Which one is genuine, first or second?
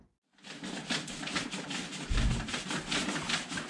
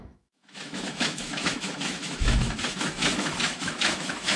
first